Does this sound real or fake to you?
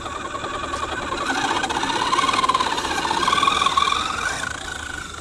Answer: fake